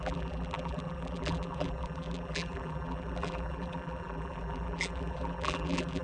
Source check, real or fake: fake